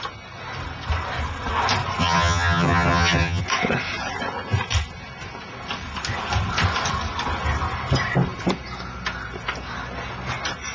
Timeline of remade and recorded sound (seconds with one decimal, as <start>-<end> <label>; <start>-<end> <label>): 0.0-2.0 recorded; 2.0-3.4 remade; 3.4-10.7 recorded